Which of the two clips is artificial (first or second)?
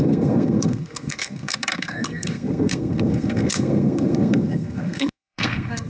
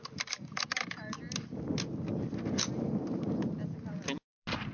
first